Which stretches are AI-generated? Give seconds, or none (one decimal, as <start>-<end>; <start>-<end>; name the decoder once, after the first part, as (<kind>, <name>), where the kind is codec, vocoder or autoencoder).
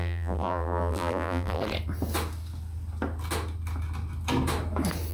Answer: 0.0-1.6 (vocoder, BigVGAN v2)